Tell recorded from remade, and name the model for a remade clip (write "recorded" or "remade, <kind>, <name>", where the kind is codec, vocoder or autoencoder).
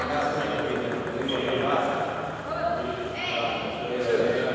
recorded